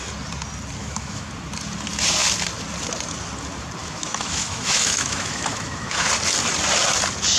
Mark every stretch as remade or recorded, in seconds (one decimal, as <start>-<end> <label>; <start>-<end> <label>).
0.0-0.8 recorded; 0.8-1.3 remade; 1.3-3.8 recorded; 3.8-6.1 remade; 6.1-7.4 recorded